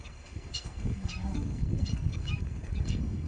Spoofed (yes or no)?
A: yes